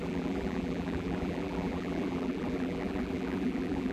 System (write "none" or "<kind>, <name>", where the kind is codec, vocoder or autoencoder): vocoder, BigVGAN v2